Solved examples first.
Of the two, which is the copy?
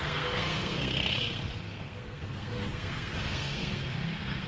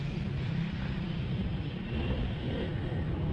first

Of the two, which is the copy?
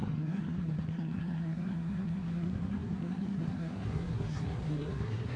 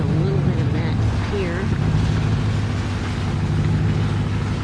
first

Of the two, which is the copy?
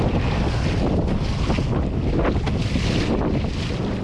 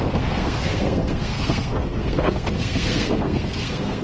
second